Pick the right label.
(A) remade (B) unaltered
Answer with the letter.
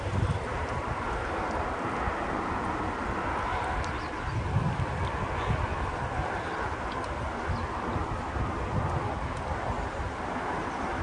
B